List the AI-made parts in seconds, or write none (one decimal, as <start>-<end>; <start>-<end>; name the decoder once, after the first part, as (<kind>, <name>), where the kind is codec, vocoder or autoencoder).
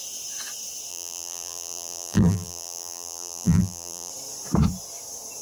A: 0.9-4.1 (vocoder, BigVGAN v2)